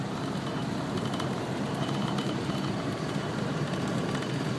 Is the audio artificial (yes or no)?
yes